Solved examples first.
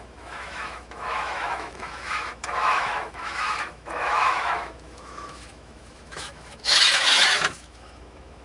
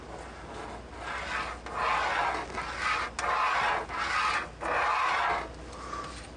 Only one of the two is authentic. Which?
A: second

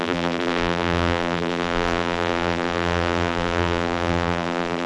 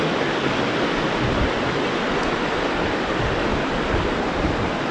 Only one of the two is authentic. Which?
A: second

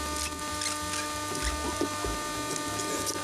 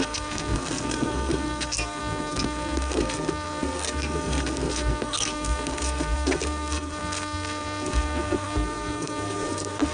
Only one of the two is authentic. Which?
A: first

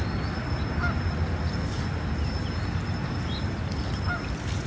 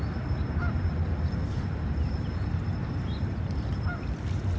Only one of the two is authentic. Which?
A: first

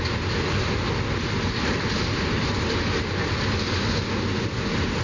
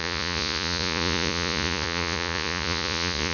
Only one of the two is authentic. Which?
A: first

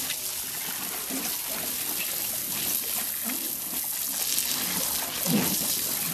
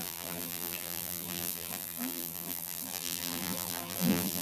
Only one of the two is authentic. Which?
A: first